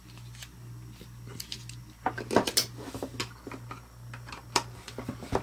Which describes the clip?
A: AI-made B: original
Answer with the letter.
B